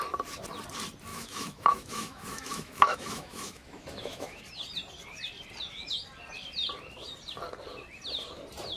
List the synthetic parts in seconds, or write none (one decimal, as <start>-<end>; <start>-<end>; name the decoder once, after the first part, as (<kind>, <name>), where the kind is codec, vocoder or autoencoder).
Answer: 1.1-4.4 (autoencoder, DAC-VAE)